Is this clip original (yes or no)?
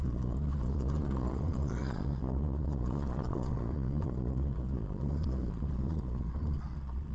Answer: no